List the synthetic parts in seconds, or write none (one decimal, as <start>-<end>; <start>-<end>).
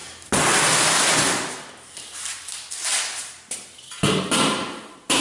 none